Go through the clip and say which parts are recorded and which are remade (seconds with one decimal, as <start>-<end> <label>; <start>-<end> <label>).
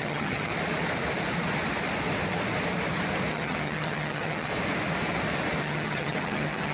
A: 0.0-0.5 remade; 0.5-3.3 recorded; 3.3-4.5 remade; 4.5-5.6 recorded; 5.6-6.7 remade